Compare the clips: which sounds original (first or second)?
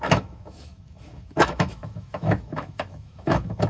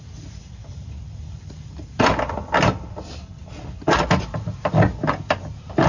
second